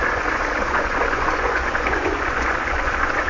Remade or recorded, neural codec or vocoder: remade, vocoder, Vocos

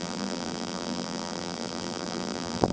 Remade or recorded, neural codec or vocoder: remade, vocoder, BigVGAN v2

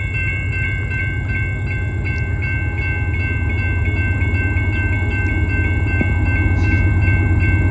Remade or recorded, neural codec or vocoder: recorded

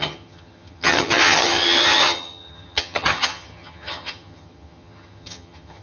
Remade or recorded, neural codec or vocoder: remade, vocoder, HiFi-GAN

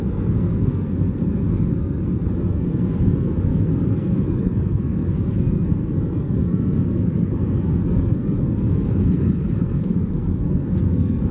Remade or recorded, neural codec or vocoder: remade, codec, SNAC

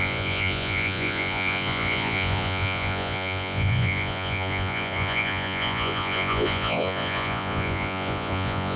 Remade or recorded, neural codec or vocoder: remade, vocoder, Vocos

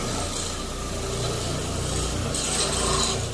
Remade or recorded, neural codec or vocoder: recorded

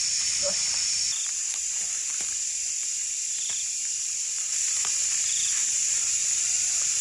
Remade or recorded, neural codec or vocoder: remade, vocoder, BigVGAN v2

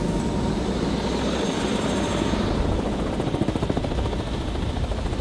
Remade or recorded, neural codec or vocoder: recorded